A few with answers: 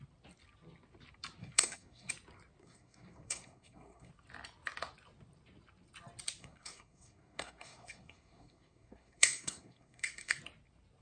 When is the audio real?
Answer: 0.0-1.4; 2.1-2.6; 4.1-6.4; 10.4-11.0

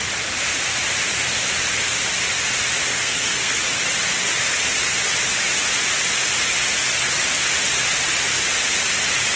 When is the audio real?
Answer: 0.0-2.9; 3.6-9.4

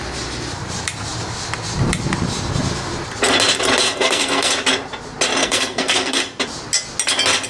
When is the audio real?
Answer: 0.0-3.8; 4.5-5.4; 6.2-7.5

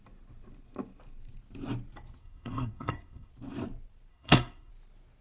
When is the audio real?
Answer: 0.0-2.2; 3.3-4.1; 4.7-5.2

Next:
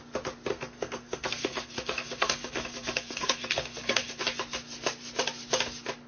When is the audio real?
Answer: 0.0-0.5; 4.2-6.1

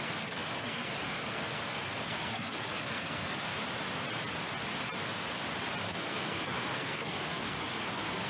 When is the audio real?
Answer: 3.5-5.8

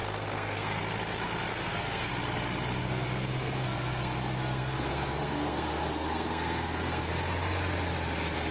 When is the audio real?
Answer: 0.8-1.5; 2.1-2.8; 7.1-8.5

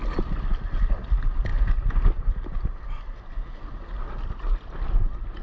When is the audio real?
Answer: 0.0-5.4